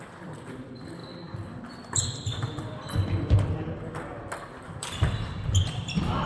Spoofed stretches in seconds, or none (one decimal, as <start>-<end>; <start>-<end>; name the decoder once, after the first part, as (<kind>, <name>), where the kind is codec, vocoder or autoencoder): 0.0-1.0 (vocoder, BigVGAN v2); 1.6-4.1; 4.7-6.3